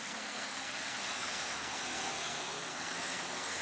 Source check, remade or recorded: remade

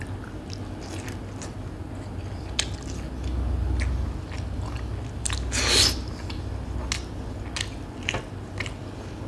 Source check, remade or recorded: recorded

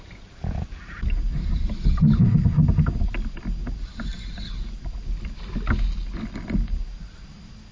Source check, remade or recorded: recorded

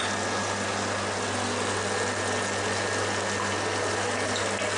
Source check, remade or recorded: recorded